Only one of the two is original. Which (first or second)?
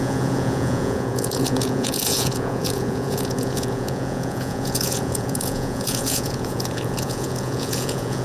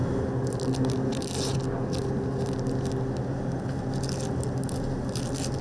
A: second